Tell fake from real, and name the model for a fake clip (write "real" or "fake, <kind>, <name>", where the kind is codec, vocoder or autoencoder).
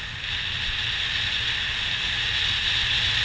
real